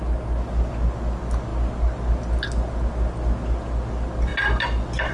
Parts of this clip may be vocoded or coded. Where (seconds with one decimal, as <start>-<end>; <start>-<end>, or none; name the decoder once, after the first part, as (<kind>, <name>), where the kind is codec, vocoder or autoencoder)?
none